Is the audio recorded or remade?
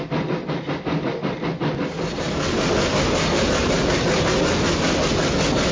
recorded